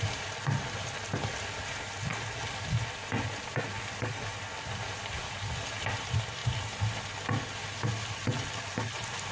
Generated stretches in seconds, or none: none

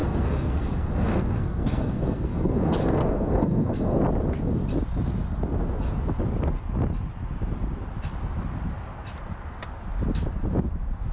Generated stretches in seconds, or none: 0.0-4.0 (codec, SNAC)

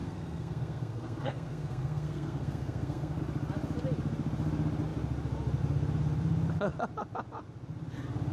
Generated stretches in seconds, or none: 0.0-3.2 (codec, SNAC)

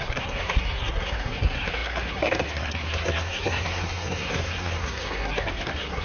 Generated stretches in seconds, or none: 0.0-6.0 (codec, SNAC)